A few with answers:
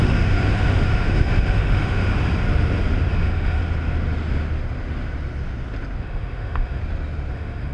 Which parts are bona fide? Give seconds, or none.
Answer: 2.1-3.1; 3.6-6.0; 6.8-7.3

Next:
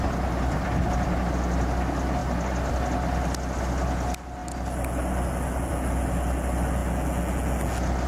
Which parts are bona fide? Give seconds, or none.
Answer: 0.0-8.1

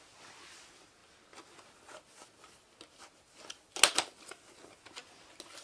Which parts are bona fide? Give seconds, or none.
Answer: 0.0-5.6

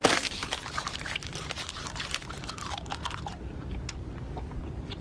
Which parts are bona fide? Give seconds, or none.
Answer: 0.0-0.4; 3.4-5.0